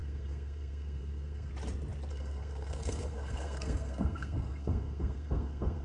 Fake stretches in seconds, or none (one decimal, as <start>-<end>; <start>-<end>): 0.0-1.5; 2.1-5.8